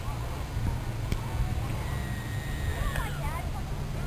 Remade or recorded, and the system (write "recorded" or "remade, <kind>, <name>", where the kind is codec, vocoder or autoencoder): recorded